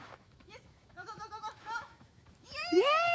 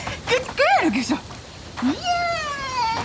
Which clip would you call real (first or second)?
second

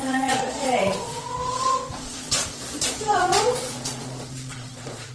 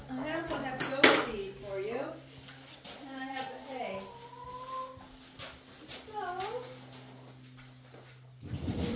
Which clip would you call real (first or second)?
second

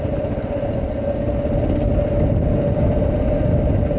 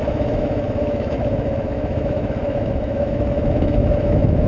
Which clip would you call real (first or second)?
first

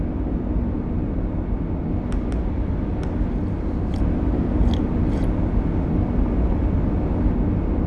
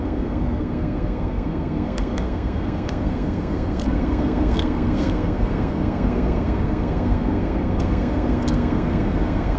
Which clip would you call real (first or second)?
first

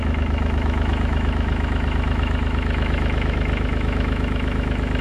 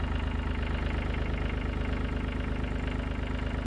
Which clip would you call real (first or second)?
second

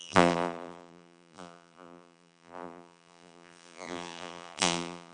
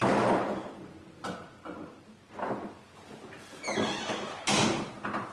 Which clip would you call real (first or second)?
second